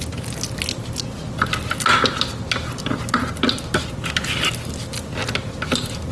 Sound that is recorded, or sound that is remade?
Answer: recorded